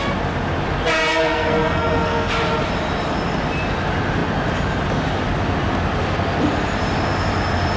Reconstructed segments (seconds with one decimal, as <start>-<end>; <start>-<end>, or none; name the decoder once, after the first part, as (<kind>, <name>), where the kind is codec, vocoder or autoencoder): 1.1-2.3 (codec, SNAC)